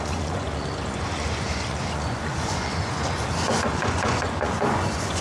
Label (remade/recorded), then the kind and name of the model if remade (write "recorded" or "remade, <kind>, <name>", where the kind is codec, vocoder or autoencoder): remade, vocoder, Vocos